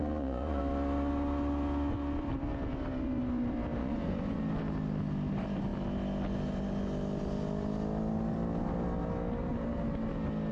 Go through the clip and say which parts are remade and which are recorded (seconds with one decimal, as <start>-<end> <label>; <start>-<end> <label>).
0.0-0.6 remade; 0.6-3.8 recorded; 3.8-4.4 remade; 4.4-10.5 recorded